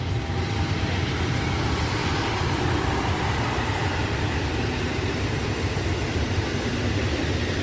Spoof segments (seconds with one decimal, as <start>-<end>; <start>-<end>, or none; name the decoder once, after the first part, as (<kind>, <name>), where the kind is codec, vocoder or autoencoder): 0.0-5.4 (vocoder, BigVGAN v2); 6.0-7.6